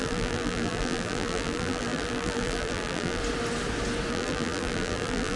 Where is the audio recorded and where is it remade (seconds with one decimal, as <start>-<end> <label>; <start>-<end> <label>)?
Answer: 0.0-3.2 remade; 3.2-4.1 recorded; 4.1-5.4 remade